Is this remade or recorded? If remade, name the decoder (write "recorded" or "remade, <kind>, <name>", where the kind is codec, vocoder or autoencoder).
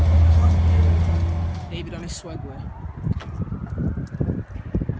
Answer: recorded